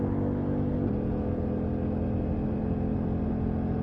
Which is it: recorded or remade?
recorded